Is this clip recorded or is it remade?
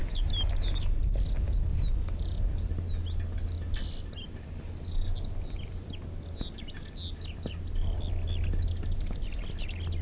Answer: recorded